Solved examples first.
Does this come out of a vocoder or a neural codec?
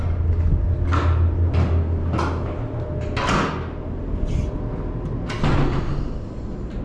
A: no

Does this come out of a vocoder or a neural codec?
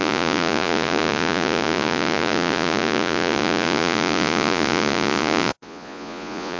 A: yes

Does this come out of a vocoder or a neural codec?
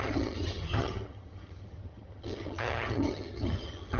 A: yes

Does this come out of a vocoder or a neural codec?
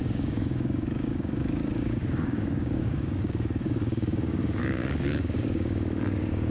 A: yes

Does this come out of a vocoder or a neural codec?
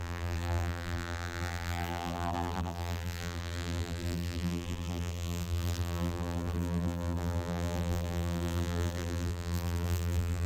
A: yes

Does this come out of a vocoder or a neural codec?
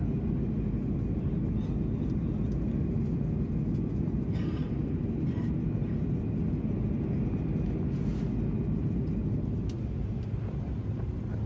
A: no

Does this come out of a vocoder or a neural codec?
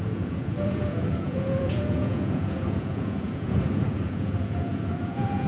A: yes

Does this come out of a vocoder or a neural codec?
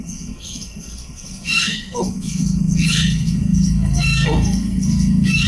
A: yes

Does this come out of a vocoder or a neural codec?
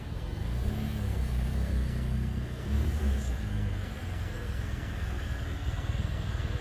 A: yes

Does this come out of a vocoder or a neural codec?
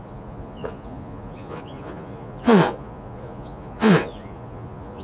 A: yes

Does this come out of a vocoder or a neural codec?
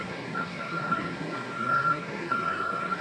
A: yes